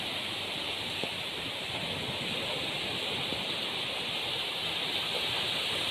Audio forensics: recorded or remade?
recorded